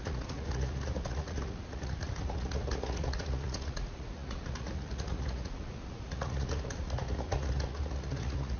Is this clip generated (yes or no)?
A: yes